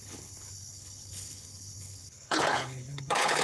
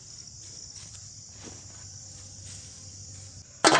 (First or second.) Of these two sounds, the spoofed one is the first